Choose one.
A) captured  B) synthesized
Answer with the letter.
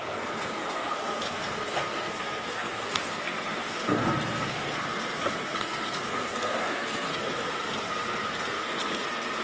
B